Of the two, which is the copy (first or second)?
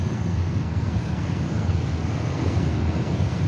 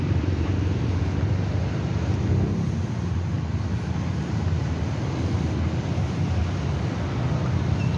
first